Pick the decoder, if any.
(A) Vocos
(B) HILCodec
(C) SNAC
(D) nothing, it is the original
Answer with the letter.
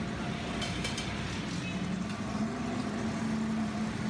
D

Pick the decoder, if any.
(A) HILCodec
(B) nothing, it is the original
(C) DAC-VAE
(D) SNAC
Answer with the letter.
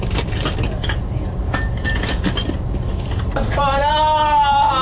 B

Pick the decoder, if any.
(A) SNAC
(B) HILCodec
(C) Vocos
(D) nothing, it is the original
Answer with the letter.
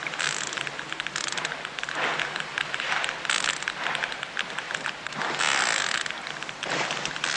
D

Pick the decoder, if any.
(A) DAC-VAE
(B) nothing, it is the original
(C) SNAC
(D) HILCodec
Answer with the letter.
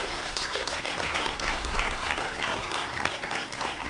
C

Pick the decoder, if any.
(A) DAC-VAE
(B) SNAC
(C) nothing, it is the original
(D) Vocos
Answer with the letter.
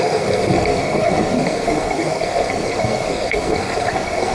B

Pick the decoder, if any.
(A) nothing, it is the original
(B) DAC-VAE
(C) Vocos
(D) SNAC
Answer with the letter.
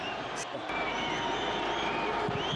A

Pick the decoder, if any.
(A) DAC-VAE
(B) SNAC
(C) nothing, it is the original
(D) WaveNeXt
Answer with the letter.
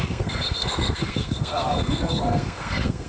B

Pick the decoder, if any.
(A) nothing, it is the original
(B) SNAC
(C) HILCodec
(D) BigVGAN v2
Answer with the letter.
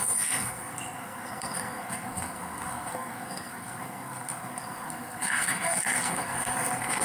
B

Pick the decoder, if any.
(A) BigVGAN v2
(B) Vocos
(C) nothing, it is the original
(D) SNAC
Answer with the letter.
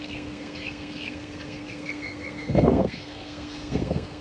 D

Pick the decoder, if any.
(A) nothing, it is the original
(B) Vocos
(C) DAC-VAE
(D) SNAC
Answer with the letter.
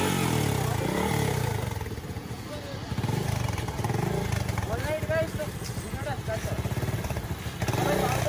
A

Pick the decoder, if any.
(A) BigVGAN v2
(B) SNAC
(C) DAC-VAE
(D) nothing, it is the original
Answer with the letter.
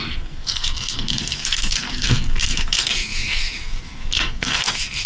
B